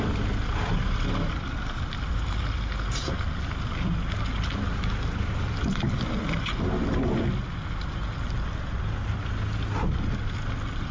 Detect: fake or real real